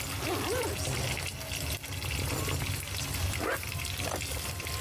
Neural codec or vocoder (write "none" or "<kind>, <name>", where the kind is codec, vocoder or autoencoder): none